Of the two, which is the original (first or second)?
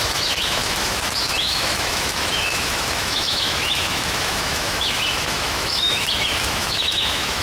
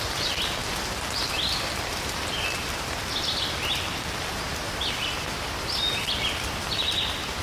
second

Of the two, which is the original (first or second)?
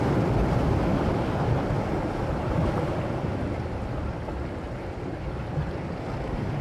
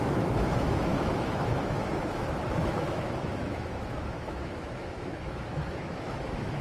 first